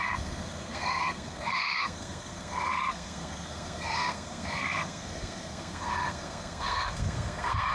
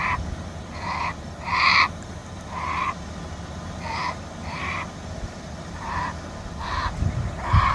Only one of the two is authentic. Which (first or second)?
second